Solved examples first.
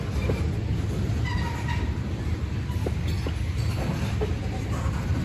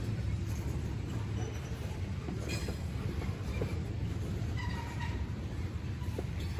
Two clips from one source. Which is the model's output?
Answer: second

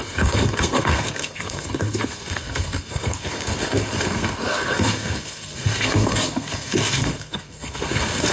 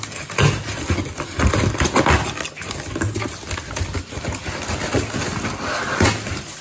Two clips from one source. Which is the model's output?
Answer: first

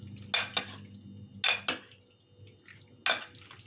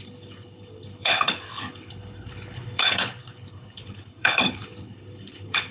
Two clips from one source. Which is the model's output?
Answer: second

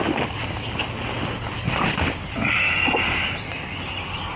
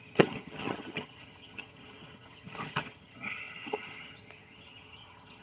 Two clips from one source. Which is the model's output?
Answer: second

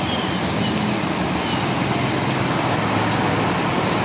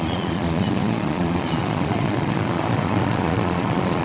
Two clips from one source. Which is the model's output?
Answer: second